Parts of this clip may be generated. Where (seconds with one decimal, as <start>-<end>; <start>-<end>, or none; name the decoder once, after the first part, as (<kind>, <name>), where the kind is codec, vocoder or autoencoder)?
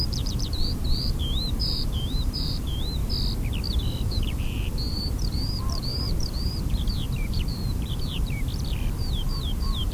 0.0-3.0 (vocoder, BigVGAN v2); 3.8-9.9